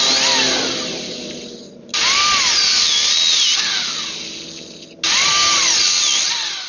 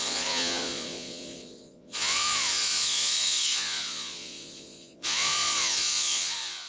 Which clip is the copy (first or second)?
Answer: second